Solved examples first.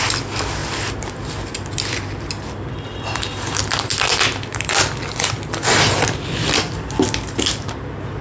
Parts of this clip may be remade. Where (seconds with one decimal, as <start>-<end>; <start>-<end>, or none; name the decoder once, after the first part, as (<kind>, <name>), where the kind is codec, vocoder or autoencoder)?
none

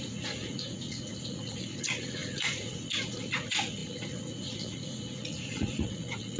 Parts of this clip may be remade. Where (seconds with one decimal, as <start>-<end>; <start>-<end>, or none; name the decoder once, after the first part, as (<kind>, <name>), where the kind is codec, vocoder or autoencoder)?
0.0-6.4 (vocoder, Vocos)

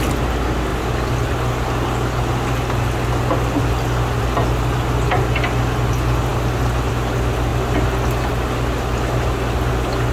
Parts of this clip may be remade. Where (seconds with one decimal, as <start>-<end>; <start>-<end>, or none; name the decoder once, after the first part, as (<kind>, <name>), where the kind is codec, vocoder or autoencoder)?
none

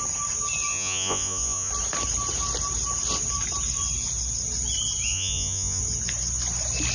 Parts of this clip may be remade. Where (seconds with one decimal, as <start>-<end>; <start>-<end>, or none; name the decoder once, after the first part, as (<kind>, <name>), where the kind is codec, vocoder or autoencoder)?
0.7-1.7 (vocoder, Vocos); 5.1-5.8

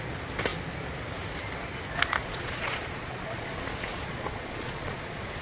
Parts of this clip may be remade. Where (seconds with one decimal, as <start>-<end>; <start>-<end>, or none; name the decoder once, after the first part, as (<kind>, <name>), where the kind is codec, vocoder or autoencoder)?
2.2-5.4 (vocoder, Vocos)

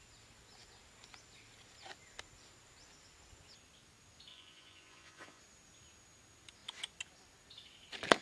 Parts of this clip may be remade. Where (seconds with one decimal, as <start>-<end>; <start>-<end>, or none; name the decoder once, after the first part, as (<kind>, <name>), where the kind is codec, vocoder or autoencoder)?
4.3-5.4 (vocoder, Vocos)

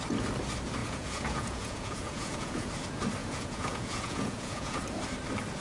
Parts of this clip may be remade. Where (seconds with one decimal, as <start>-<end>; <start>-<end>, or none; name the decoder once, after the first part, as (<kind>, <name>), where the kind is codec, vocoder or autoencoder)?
0.8-2.7 (vocoder, Vocos); 3.2-4.8

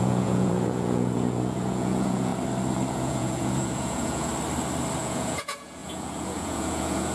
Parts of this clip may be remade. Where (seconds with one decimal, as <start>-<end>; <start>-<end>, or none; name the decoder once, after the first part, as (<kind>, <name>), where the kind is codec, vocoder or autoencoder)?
0.0-2.3 (vocoder, Vocos); 2.9-4.3; 5.0-7.1